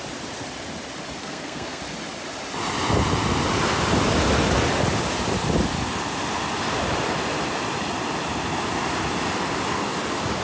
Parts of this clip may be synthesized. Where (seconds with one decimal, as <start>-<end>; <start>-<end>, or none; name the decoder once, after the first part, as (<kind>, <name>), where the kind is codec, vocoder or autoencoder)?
1.2-1.8 (codec, SNAC)